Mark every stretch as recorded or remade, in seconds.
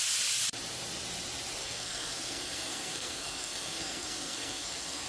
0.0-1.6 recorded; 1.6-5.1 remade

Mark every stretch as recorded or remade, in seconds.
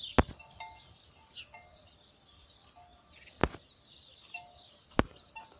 0.0-5.6 recorded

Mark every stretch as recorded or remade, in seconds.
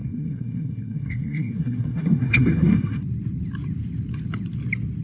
0.0-3.0 remade; 3.0-5.0 recorded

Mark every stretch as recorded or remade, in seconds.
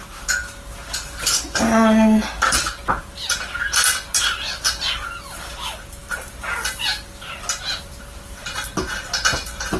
0.0-9.8 recorded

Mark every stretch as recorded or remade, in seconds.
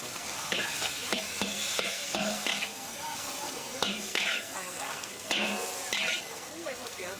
0.0-5.5 remade; 5.5-6.2 recorded; 6.2-7.2 remade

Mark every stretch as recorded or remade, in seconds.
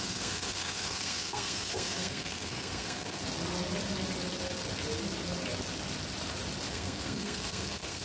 0.0-3.2 remade; 3.2-6.7 recorded; 6.7-8.0 remade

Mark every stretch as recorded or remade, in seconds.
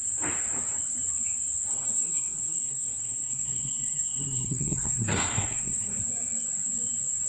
0.0-1.7 recorded; 1.7-6.0 remade; 6.0-7.3 recorded